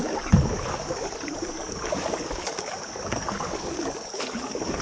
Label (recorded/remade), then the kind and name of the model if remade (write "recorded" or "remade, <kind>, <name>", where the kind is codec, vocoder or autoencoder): remade, codec, DAC